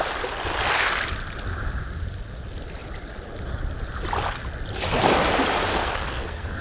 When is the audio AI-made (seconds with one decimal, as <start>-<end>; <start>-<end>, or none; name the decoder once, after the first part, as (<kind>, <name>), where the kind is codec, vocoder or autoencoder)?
5.7-6.6 (codec, SNAC)